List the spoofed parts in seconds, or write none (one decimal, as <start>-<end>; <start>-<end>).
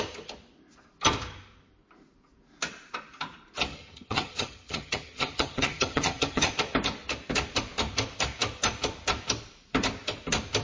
3.7-6.5